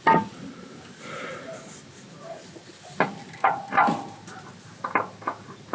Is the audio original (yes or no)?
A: yes